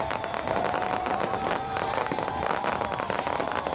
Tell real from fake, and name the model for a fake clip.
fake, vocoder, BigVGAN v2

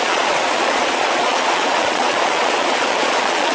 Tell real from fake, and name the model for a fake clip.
fake, vocoder, Vocos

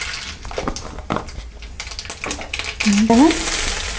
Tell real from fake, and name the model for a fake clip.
real